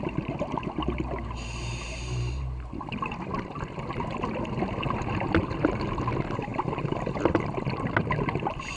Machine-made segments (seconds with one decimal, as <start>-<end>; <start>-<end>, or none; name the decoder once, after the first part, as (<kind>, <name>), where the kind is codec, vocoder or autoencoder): none